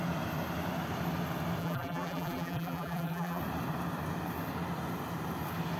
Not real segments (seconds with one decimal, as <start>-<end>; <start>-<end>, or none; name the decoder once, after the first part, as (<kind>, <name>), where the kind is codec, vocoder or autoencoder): 1.6-3.4 (vocoder, BigVGAN v2)